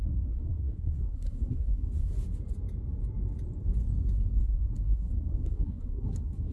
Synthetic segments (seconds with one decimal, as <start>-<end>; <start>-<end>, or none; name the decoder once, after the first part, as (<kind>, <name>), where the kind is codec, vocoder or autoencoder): 0.0-2.1 (codec, SNAC); 4.4-6.5